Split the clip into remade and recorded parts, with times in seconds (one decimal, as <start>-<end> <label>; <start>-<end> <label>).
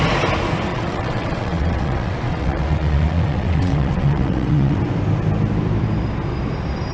0.0-0.7 recorded; 0.7-4.8 remade; 4.8-6.9 recorded